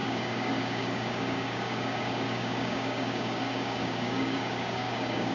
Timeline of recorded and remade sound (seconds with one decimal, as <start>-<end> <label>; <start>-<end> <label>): 0.0-5.3 remade